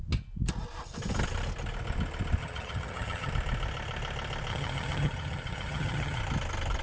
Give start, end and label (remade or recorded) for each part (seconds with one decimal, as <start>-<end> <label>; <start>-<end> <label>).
0.0-2.4 recorded; 2.4-3.3 remade; 3.3-4.5 recorded; 4.5-6.2 remade; 6.2-6.8 recorded